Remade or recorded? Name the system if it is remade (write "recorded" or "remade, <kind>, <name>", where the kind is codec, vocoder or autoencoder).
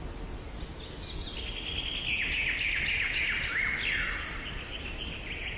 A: recorded